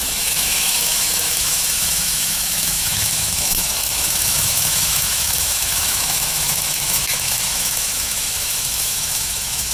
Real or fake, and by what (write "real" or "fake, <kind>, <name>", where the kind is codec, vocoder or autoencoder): fake, autoencoder, DAC-VAE